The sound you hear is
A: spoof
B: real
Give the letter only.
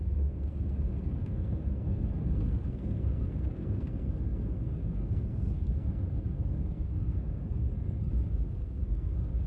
A